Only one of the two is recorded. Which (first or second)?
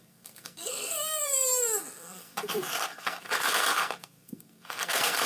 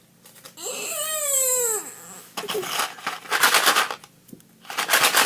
second